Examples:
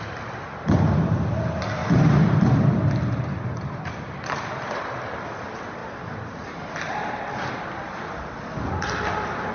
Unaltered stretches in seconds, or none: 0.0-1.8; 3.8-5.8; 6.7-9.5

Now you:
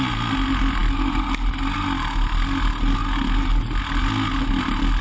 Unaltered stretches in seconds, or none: 0.0-5.0

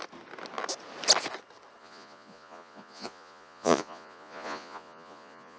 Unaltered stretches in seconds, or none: 0.0-1.8

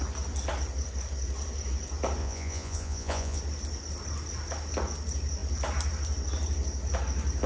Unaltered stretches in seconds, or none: 0.0-2.2; 3.4-7.5

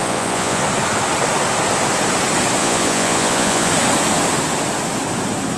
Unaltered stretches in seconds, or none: 0.6-2.6; 3.7-5.6

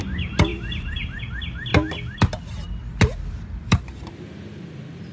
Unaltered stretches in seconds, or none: 0.0-0.5; 1.2-3.6; 4.2-5.1